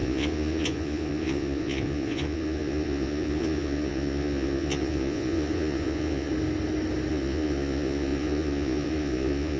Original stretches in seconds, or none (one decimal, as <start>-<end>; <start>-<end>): 6.3-7.1